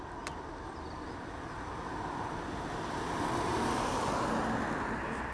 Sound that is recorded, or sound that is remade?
recorded